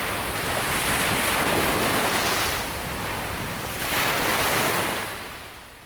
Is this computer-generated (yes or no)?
no